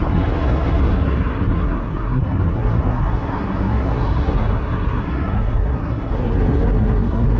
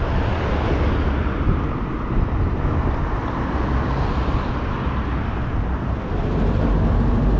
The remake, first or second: first